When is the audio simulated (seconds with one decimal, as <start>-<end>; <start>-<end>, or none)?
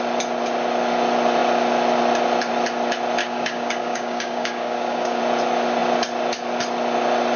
3.2-5.2